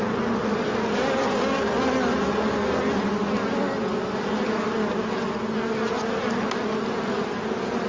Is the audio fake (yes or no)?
no